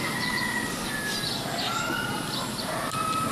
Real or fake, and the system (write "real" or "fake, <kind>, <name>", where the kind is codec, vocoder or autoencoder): real